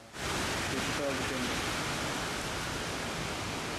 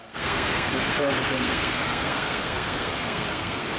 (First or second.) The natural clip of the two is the first